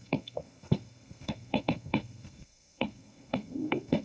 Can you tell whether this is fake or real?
fake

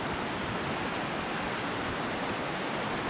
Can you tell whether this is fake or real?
real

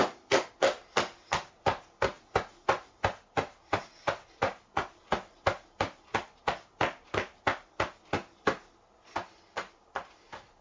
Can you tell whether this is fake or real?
real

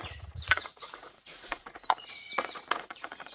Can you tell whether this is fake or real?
fake